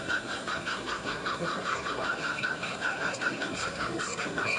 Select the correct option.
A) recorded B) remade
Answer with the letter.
B